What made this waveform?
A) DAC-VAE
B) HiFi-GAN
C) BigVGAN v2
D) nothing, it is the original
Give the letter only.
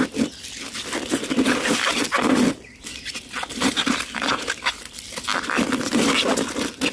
D